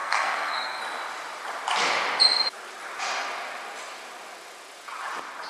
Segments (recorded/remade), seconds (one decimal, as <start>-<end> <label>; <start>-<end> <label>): 0.0-0.8 remade; 0.8-5.5 recorded